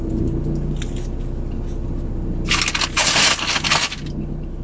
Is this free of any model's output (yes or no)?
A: yes